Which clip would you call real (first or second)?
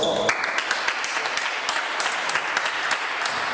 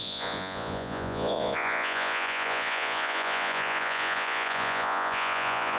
first